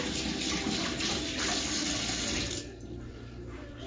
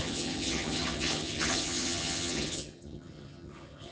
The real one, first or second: first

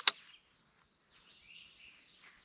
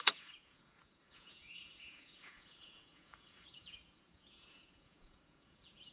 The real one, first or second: first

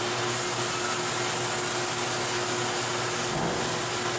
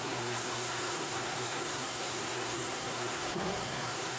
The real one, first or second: first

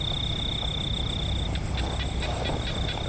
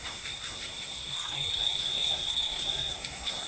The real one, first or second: first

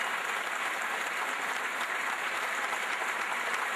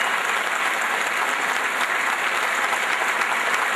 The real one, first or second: second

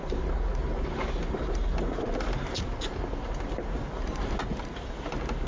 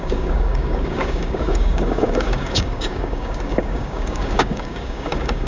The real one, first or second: first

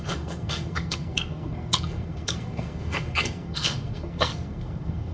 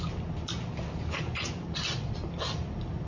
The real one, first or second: second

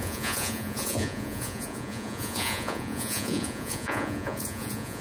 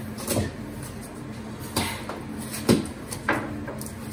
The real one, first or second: second